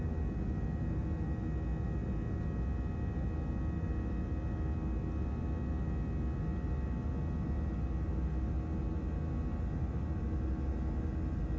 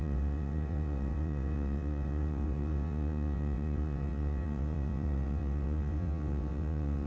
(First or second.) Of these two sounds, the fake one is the second